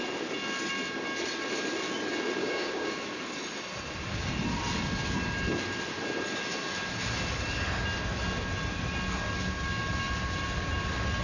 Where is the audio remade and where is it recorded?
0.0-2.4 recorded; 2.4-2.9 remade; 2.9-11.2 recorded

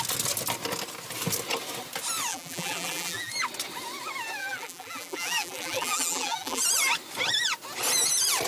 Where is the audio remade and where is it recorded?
0.0-2.3 recorded; 2.3-3.3 remade; 3.3-4.4 recorded; 4.4-6.6 remade; 6.6-8.5 recorded

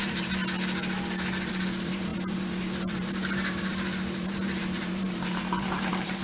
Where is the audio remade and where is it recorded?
0.0-0.4 remade; 0.4-1.5 recorded; 1.5-6.2 remade

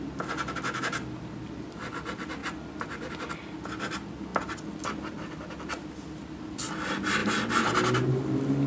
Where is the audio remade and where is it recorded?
0.0-2.4 recorded; 2.4-3.1 remade; 3.1-8.7 recorded

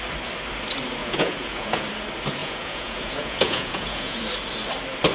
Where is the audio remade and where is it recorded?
0.0-1.0 recorded; 1.0-1.8 remade; 1.8-2.4 recorded; 2.4-4.2 remade; 4.2-5.1 recorded